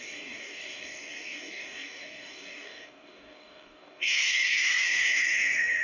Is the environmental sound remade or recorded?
remade